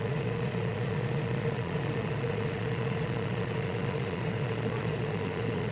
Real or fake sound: fake